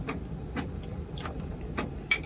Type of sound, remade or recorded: remade